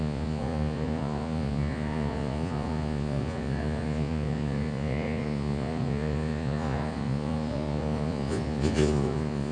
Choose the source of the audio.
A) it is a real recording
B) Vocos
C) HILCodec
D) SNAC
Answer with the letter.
B